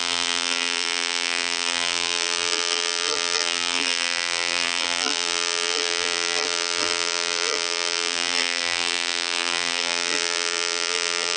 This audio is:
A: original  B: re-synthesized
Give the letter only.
B